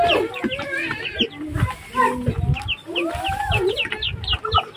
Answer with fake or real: real